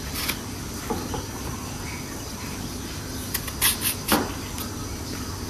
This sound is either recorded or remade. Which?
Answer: recorded